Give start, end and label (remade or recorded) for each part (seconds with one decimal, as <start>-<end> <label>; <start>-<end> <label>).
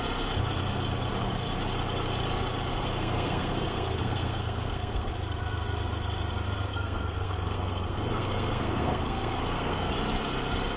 0.0-2.7 recorded; 2.7-5.1 remade; 5.1-6.7 recorded; 6.7-9.9 remade; 9.9-10.8 recorded